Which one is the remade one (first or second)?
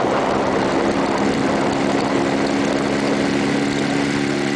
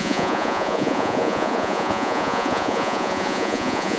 second